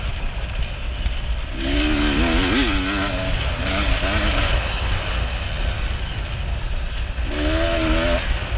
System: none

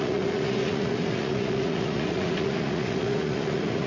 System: vocoder, Vocos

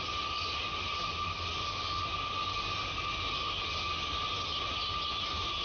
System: none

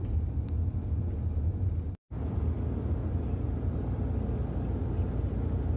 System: none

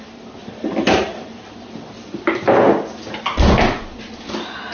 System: none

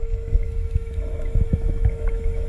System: autoencoder, DAC-VAE